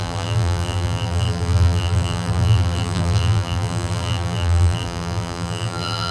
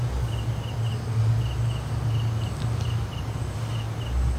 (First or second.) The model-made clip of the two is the first